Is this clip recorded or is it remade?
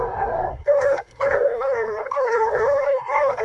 remade